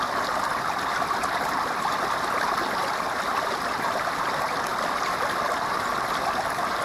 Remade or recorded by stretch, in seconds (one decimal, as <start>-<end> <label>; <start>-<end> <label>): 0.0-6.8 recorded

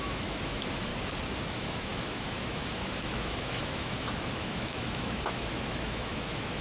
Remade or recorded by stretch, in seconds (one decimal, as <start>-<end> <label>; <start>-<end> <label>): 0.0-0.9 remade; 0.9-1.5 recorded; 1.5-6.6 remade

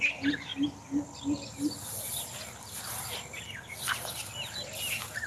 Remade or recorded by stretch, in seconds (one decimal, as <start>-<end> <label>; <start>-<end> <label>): 0.0-5.3 recorded